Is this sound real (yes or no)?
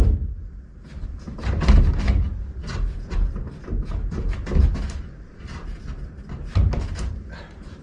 yes